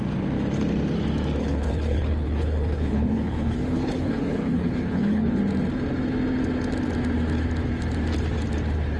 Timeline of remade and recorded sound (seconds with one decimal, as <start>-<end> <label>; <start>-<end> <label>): 0.0-1.4 recorded; 1.4-5.4 remade; 5.4-9.0 recorded